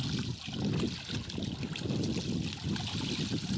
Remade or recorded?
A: recorded